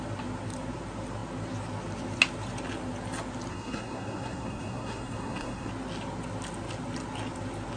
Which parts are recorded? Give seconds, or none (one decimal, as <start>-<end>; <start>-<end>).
0.0-3.5; 5.7-7.8